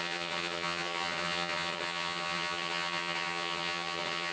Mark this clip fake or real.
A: fake